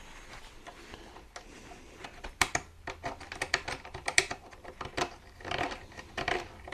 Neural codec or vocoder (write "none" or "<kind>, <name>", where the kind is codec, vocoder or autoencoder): none